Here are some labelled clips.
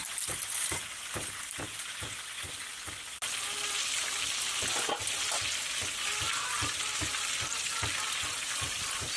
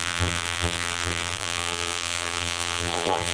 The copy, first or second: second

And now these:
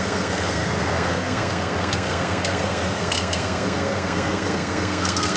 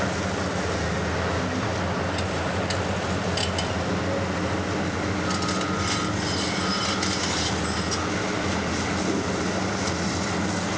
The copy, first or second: first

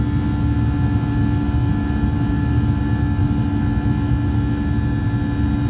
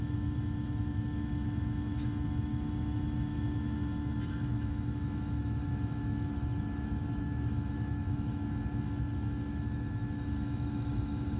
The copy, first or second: second